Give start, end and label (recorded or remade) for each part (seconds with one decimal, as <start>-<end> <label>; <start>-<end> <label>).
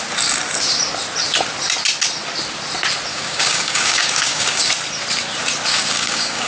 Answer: 0.0-3.1 recorded; 3.1-4.7 remade; 4.7-5.7 recorded; 5.7-6.5 remade